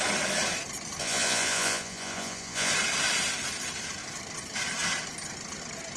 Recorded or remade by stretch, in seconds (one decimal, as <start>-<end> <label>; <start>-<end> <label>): 0.0-1.0 recorded; 1.0-2.7 remade; 2.7-6.0 recorded